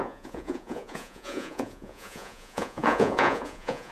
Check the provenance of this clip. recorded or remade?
remade